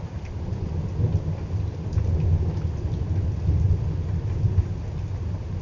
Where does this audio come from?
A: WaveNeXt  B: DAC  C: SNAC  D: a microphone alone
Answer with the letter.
D